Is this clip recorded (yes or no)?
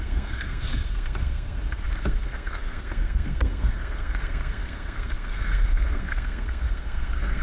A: no